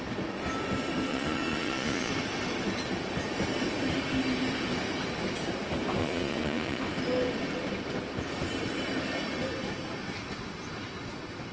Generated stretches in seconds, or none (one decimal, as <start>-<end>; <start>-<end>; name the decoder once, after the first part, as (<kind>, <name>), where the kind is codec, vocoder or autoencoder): 1.1-2.1 (vocoder, Vocos); 6.0-6.8